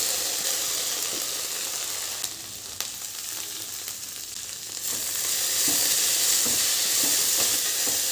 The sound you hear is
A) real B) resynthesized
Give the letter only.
A